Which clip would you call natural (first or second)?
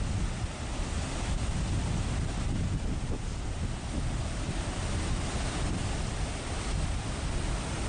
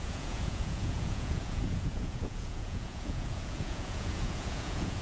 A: first